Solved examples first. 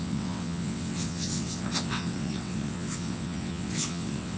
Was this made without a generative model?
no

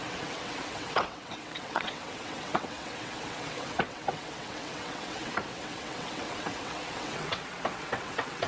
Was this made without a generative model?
no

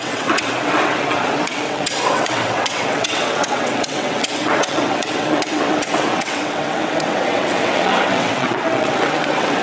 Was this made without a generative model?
no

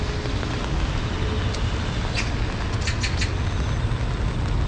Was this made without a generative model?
yes